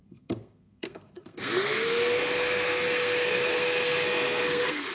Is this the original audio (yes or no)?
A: no